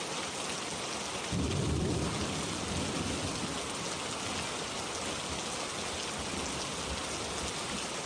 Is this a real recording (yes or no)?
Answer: yes